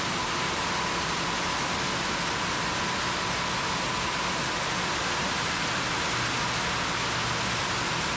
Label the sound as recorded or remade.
recorded